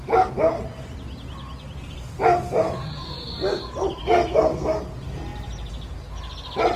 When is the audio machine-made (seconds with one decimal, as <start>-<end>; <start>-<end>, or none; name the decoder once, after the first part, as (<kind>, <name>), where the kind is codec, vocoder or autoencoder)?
4.0-4.8 (codec, SNAC)